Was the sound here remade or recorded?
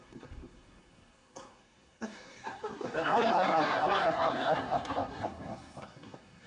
remade